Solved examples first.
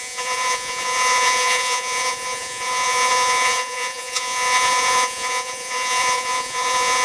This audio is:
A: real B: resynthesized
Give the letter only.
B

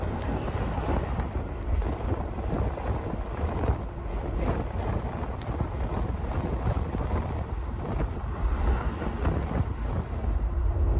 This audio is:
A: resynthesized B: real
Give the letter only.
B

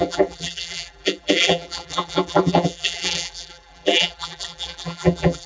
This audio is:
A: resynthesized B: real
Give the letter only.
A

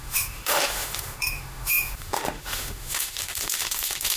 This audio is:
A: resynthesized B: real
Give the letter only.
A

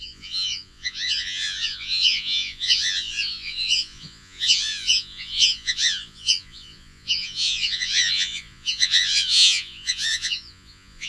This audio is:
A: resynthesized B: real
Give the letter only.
A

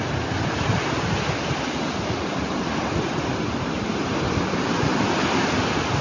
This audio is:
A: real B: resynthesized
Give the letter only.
A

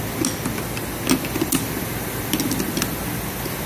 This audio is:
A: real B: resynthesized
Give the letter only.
A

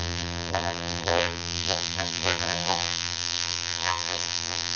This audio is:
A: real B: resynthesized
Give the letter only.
B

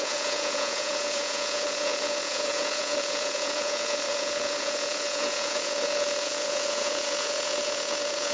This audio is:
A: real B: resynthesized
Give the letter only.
B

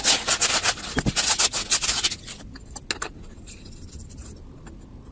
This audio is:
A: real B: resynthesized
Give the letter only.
A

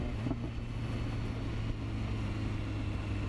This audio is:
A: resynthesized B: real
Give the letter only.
B